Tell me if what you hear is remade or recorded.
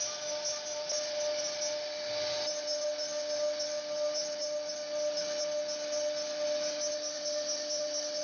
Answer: recorded